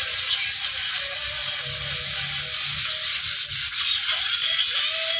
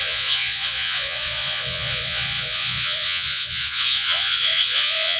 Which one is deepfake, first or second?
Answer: second